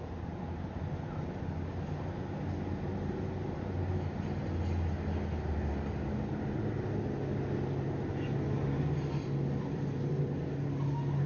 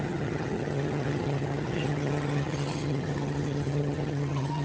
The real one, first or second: first